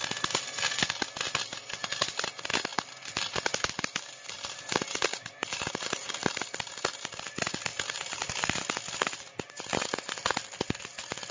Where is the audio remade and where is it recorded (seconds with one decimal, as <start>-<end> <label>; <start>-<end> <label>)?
0.0-11.3 recorded